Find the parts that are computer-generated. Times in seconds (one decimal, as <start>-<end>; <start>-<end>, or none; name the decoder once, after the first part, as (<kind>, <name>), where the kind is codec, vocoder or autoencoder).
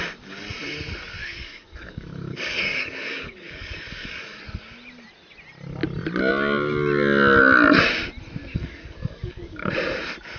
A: 1.2-4.4 (codec, DAC); 8.5-9.7